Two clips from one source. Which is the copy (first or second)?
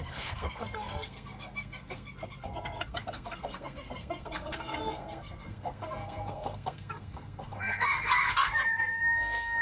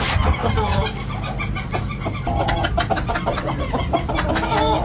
first